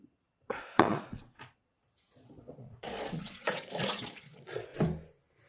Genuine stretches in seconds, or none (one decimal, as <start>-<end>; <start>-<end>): 4.7-5.5